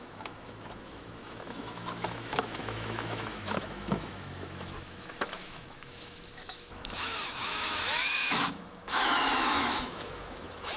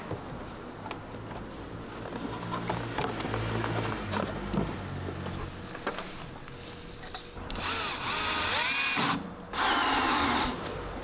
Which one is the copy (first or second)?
first